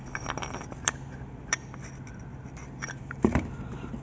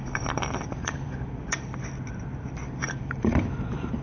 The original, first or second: first